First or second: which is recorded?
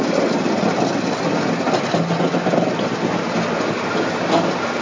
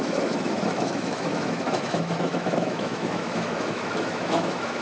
first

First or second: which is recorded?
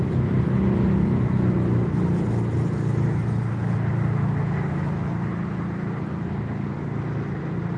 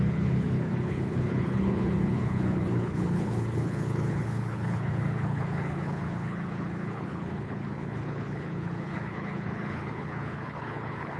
first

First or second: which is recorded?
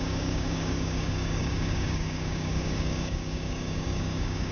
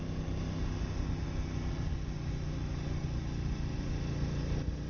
second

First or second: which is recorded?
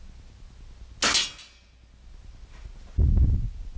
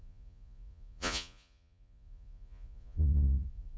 first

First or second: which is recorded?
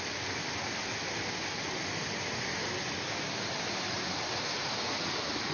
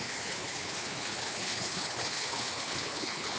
first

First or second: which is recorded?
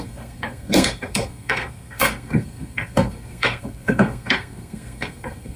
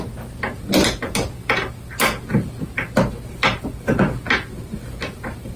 second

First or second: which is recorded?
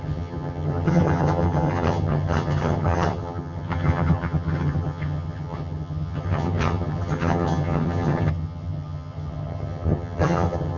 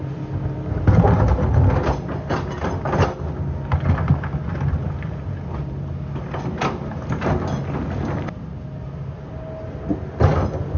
second